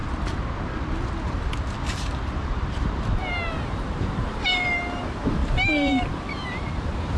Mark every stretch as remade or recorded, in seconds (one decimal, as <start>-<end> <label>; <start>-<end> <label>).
0.0-1.8 recorded; 1.8-7.2 remade